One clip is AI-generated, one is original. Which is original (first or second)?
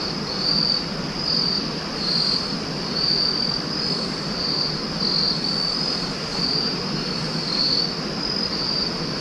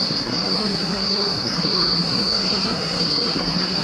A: first